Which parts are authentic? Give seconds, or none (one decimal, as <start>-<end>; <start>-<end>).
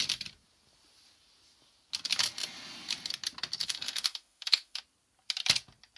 0.0-3.6; 4.8-6.0